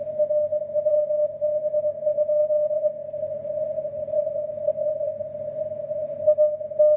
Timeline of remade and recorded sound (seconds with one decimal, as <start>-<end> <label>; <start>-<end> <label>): 0.0-7.0 recorded